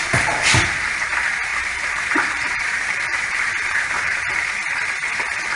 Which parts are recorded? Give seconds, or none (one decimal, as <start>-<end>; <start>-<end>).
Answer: 0.0-1.5; 4.2-5.6